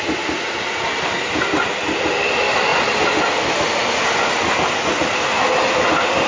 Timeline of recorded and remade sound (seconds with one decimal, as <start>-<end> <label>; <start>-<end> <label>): 0.0-6.3 recorded